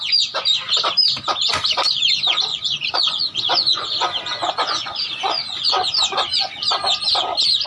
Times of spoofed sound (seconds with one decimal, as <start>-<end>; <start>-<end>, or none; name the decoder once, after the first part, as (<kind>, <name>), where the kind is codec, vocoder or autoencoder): 2.5-7.0 (vocoder, Vocos)